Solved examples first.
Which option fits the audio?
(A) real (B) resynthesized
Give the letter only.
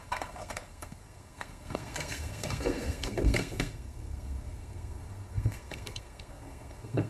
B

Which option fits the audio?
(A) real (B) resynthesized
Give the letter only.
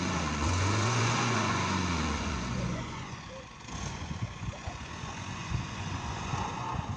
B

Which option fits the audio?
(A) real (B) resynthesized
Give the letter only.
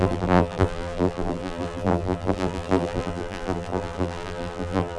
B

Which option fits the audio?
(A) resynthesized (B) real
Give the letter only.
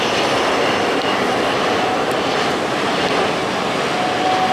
B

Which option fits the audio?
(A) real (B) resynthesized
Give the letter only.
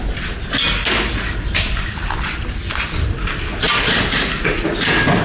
A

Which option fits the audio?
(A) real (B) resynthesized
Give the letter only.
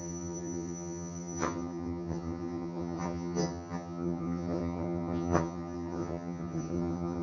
B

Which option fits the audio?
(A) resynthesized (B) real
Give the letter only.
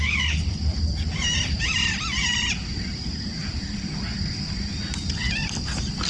B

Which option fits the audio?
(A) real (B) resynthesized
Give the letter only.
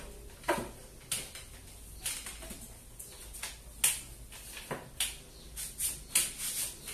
A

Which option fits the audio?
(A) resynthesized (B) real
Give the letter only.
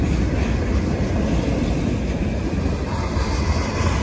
B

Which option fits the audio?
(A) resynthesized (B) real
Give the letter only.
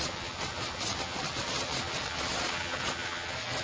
A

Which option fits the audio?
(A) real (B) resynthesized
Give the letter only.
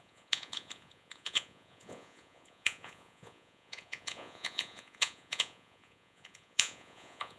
B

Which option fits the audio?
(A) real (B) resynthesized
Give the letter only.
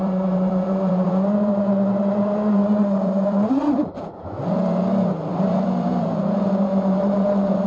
B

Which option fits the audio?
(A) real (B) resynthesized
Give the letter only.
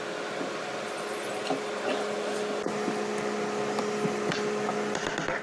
A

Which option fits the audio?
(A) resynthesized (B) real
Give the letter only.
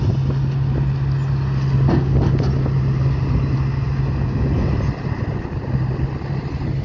B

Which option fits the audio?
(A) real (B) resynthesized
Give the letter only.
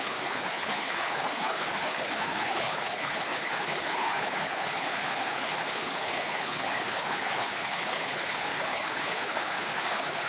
B